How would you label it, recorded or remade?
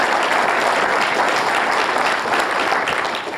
remade